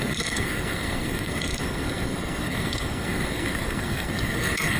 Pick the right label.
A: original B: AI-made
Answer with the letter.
B